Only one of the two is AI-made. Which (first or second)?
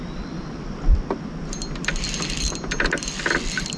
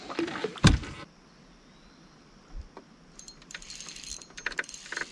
second